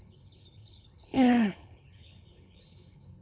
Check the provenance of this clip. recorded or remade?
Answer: remade